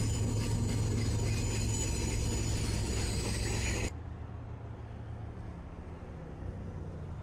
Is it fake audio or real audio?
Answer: real